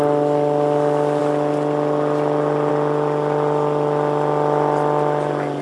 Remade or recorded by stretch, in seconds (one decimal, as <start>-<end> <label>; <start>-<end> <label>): 0.0-5.6 recorded